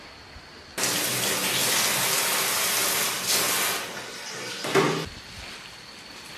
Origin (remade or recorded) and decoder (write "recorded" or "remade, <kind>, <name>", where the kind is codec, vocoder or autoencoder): recorded